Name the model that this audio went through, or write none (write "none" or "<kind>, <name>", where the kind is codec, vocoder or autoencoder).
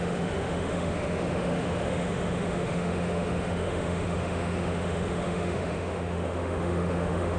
autoencoder, DAC-VAE